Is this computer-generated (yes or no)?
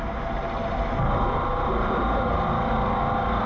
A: no